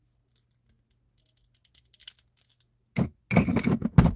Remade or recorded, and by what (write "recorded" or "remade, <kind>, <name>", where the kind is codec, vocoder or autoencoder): recorded